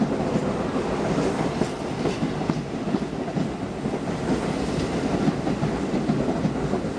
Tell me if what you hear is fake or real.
real